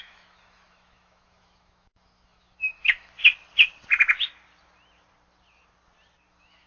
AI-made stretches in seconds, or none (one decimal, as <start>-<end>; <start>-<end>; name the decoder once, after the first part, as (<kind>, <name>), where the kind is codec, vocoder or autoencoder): 0.0-3.2 (autoencoder, DAC-VAE); 6.3-6.7